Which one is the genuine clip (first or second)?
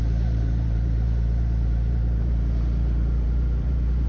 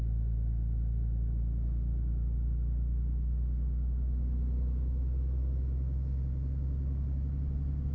second